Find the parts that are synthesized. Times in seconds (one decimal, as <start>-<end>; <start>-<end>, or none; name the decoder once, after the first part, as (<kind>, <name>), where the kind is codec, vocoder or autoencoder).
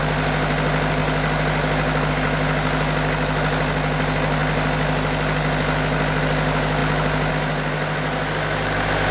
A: none